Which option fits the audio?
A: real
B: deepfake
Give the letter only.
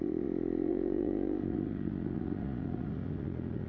B